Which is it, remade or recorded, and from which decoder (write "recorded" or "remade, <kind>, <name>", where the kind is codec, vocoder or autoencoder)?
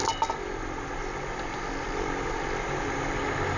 recorded